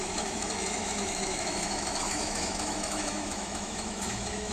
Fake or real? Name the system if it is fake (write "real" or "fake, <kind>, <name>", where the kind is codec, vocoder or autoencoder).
fake, autoencoder, DAC-VAE